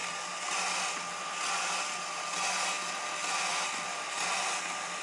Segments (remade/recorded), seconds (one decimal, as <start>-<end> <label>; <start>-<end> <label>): 0.0-5.0 recorded